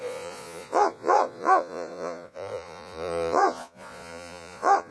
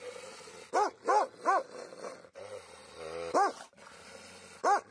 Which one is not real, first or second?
first